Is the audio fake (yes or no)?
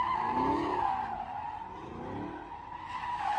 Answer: no